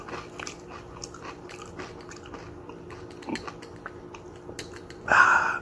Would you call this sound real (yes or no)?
yes